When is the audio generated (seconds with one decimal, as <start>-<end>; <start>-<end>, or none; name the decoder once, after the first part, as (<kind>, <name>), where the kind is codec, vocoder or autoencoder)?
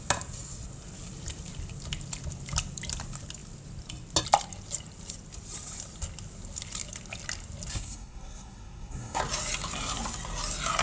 7.7-9.2 (codec, SNAC)